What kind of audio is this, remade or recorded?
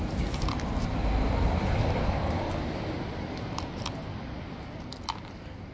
recorded